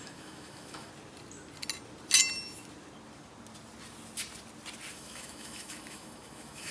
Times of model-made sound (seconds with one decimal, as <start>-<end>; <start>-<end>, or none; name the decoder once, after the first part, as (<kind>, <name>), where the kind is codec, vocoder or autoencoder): 0.0-0.9 (autoencoder, DAC-VAE); 4.9-6.7